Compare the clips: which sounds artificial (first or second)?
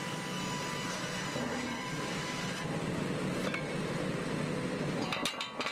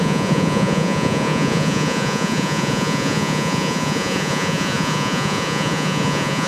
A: second